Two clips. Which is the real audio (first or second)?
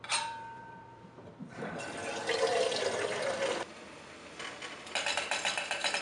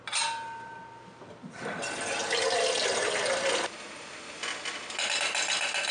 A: second